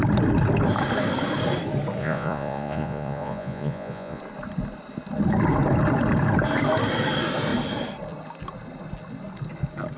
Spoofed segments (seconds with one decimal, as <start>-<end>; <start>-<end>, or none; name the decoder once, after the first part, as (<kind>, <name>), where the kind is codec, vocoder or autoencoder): 2.0-4.2 (vocoder, Vocos)